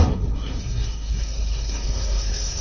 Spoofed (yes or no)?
yes